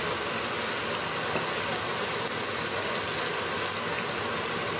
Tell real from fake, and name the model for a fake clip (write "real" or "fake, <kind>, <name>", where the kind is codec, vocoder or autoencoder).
real